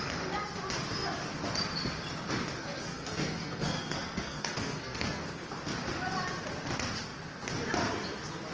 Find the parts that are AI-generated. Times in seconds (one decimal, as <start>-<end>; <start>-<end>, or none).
2.6-5.2